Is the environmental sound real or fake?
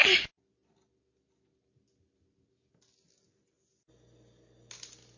real